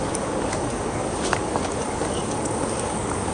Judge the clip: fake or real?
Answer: fake